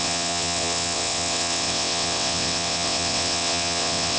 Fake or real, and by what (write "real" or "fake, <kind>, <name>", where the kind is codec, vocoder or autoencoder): fake, vocoder, WaveNeXt